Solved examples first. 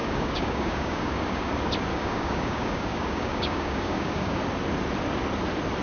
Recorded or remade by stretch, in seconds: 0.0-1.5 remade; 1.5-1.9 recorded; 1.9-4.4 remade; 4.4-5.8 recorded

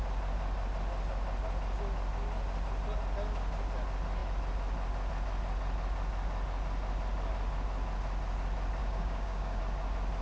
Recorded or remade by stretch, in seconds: 0.0-8.8 recorded; 8.8-9.6 remade; 9.6-10.2 recorded

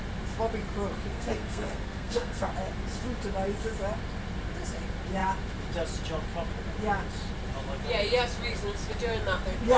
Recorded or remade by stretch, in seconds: 0.0-1.1 recorded; 1.1-2.5 remade; 2.5-9.8 recorded